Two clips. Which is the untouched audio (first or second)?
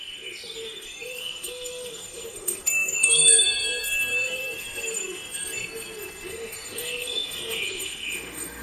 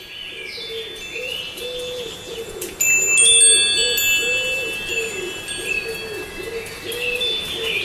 second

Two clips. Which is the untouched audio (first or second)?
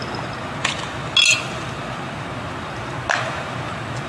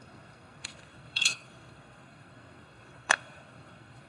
first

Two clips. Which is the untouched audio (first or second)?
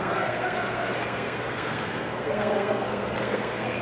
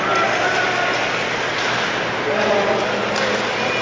second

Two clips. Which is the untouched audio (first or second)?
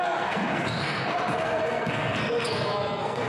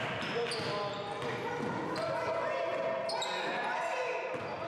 second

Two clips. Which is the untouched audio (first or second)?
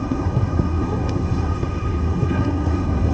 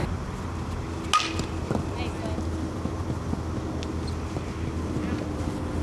second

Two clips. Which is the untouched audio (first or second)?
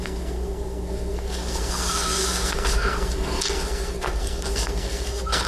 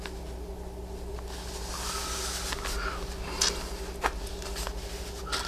second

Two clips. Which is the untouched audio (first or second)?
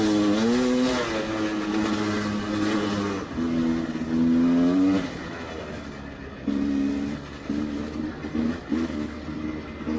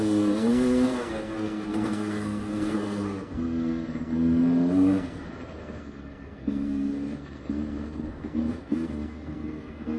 first